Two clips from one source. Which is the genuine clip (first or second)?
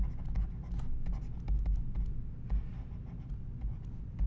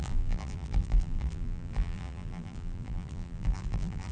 first